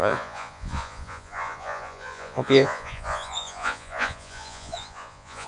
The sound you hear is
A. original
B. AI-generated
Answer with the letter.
B